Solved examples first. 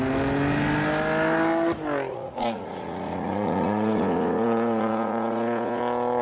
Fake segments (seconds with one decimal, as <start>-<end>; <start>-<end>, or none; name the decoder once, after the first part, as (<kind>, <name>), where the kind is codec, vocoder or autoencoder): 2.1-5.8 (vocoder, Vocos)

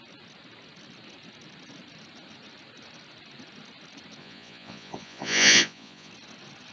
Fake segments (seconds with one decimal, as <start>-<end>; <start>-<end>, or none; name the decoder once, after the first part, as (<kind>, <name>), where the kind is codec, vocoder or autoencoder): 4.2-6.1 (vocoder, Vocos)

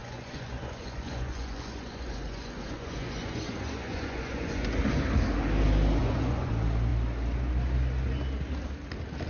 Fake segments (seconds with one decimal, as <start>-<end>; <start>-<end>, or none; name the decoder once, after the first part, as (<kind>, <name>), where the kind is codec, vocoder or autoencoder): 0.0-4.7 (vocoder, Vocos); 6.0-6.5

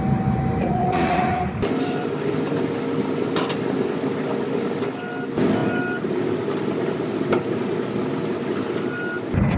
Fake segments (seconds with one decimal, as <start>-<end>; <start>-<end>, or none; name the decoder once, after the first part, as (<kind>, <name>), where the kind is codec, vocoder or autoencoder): 0.6-1.4 (vocoder, Vocos)